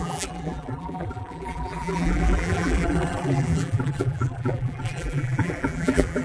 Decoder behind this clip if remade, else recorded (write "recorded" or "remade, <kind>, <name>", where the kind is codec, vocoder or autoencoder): remade, vocoder, BigVGAN v2